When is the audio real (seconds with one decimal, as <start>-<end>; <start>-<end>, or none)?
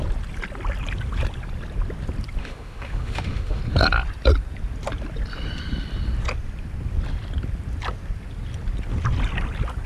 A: 0.0-2.4; 3.6-9.9